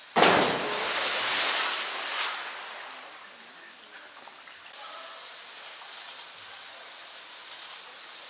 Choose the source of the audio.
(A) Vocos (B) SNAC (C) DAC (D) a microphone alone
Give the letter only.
D